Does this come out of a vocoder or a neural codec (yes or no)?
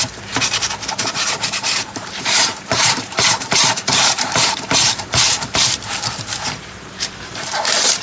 yes